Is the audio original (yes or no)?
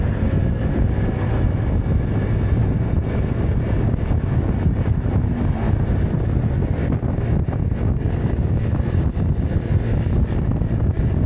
yes